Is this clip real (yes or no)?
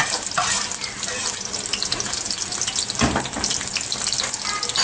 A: yes